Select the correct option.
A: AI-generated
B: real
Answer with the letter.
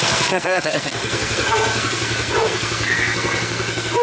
A